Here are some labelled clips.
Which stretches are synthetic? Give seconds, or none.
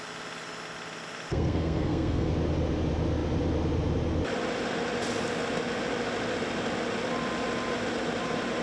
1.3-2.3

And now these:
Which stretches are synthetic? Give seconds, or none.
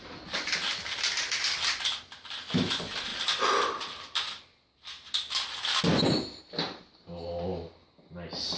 none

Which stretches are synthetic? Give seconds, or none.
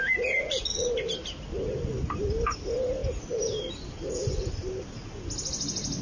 none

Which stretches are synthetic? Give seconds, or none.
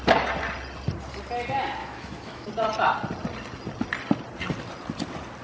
1.8-2.5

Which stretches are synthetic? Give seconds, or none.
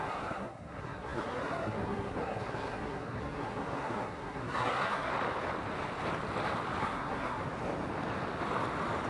0.0-5.1; 6.8-7.4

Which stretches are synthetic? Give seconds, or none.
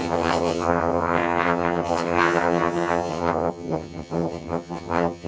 0.0-5.3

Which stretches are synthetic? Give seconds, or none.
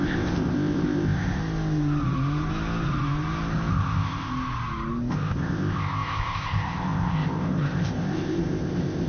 0.0-1.4; 3.7-4.3; 5.1-9.1